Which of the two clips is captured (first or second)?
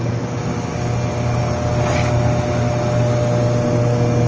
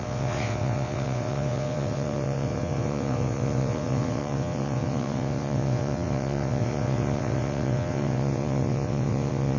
first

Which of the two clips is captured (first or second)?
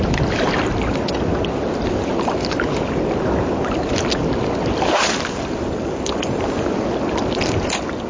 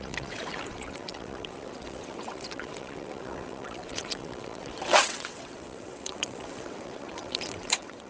first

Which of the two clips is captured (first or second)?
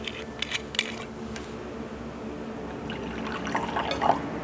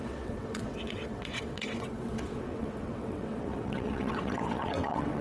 first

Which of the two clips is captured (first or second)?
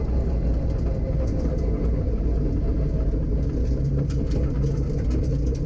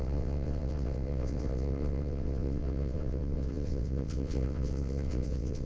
first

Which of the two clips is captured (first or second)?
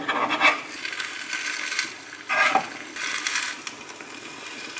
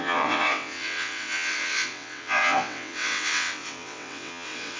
first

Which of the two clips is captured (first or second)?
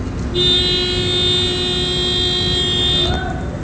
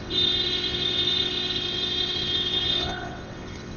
first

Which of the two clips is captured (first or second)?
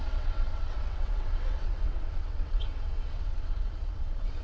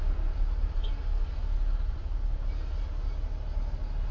second